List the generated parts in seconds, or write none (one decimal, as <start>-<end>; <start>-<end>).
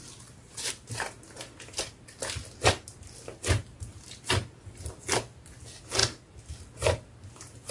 none